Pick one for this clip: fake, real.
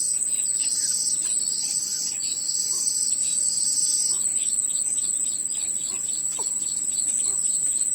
real